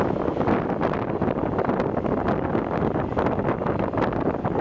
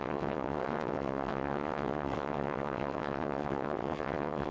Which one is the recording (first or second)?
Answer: first